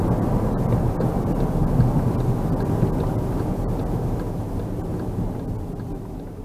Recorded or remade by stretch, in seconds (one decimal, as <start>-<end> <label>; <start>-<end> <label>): 0.0-6.4 recorded